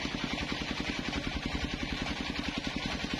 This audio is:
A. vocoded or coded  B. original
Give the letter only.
B